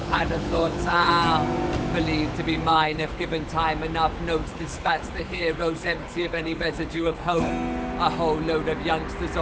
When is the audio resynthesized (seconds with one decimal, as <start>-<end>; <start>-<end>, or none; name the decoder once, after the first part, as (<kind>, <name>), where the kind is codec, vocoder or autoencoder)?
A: 0.0-1.1 (codec, HILCodec); 2.7-3.5; 4.4-7.5